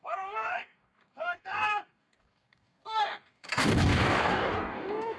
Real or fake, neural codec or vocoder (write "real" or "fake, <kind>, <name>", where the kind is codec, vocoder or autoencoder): fake, codec, DAC